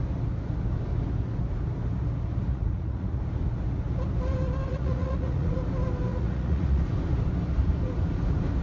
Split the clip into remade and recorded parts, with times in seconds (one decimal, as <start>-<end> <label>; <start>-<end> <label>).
0.0-2.5 recorded; 2.5-3.2 remade; 3.2-4.7 recorded; 4.7-5.6 remade; 5.6-6.1 recorded; 6.1-6.8 remade; 6.8-8.6 recorded